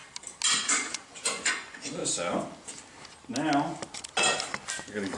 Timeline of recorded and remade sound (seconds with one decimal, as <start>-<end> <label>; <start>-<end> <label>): 0.0-0.5 recorded; 0.5-2.0 remade; 2.0-4.7 recorded; 4.7-5.2 remade